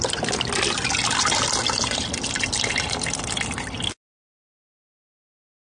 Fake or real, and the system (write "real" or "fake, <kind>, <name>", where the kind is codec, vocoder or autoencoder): real